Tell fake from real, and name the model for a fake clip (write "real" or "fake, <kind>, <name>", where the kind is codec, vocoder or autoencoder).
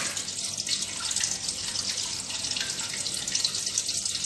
real